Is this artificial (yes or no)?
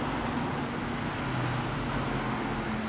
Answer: no